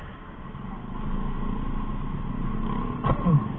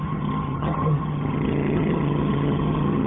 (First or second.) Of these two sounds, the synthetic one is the second